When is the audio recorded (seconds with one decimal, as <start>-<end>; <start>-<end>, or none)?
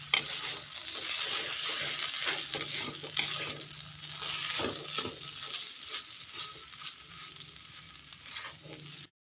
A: 0.0-9.2